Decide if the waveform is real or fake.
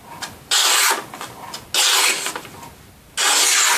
real